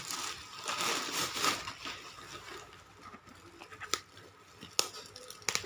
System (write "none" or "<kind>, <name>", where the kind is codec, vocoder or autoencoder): none